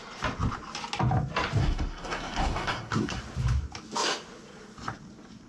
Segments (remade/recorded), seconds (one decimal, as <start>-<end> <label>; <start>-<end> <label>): 0.0-1.6 recorded; 1.6-3.2 remade; 3.2-5.5 recorded